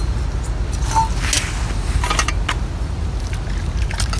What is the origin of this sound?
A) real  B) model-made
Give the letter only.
A